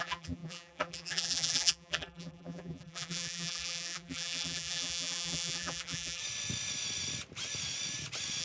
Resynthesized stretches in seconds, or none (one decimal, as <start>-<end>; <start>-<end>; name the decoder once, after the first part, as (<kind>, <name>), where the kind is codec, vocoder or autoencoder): 0.0-6.2 (vocoder, BigVGAN v2)